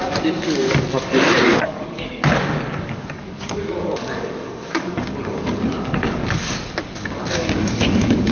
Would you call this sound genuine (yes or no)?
no